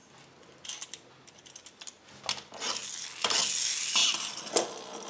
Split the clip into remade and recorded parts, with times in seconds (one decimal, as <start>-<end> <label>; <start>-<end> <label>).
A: 0.0-5.1 recorded